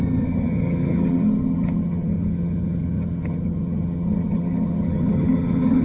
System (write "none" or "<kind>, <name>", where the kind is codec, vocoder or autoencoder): vocoder, HiFi-GAN